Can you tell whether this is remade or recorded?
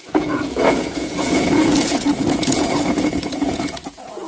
remade